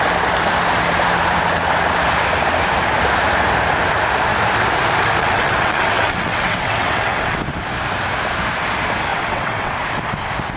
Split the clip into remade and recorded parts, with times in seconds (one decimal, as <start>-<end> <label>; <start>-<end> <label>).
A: 0.0-5.2 recorded; 5.2-7.4 remade; 7.4-9.1 recorded; 9.1-9.7 remade; 9.7-10.6 recorded